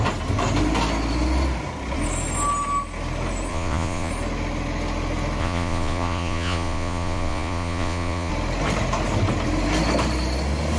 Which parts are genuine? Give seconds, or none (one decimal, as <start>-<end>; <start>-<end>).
0.0-3.5; 4.1-5.4; 8.3-10.8